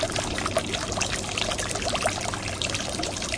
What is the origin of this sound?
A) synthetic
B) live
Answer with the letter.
B